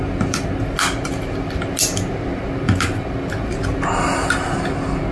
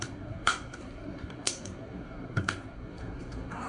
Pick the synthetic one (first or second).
second